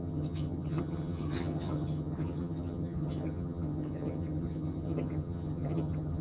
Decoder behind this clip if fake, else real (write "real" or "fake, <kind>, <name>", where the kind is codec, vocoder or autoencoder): fake, vocoder, HiFi-GAN